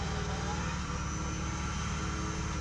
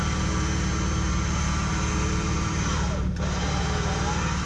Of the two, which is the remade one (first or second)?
second